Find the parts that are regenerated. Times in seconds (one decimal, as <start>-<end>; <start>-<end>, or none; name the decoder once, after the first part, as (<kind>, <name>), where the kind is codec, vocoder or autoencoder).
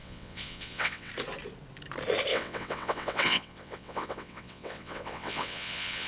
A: 0.0-1.1 (vocoder, WaveNeXt); 2.3-6.1